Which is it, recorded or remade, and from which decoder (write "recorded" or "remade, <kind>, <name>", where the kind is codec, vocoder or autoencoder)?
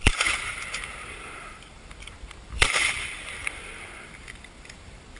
remade, vocoder, BigVGAN v2